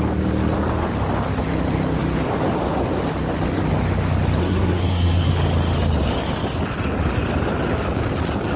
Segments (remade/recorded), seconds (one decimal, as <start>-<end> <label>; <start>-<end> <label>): 0.0-4.4 recorded; 4.4-5.3 remade; 5.3-8.6 recorded